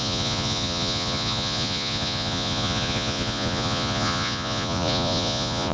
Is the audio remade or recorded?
remade